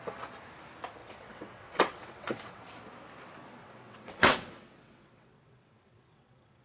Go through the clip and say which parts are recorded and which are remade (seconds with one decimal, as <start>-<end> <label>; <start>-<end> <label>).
0.0-1.0 recorded; 1.0-2.6 remade; 2.6-3.6 recorded; 3.6-6.6 remade